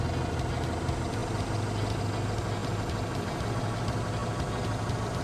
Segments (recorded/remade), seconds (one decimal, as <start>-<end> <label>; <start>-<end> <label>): 0.0-5.2 recorded